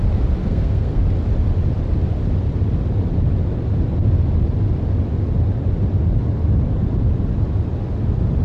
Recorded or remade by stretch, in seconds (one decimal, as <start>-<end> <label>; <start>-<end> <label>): 0.0-0.4 recorded; 0.4-1.0 remade; 1.0-8.4 recorded